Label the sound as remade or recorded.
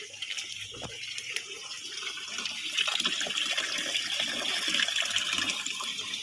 recorded